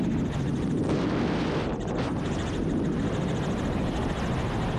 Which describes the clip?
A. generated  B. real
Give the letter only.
B